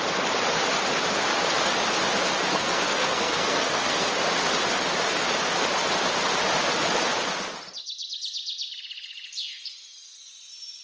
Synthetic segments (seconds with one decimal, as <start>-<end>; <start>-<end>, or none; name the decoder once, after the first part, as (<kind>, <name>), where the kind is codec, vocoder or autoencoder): 2.5-4.1 (codec, SNAC)